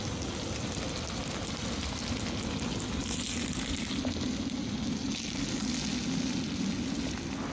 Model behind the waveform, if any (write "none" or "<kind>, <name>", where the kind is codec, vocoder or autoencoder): none